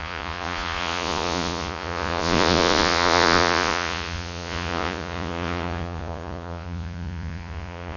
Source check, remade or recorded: remade